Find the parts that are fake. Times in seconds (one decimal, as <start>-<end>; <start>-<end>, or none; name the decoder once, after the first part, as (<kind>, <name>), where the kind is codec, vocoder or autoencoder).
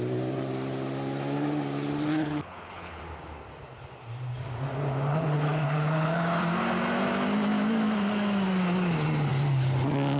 2.1-3.0 (codec, HILCodec); 5.1-6.4